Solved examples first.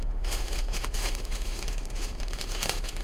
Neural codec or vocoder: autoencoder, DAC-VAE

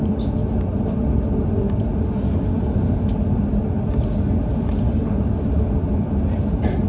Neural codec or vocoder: none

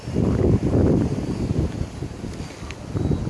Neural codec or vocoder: none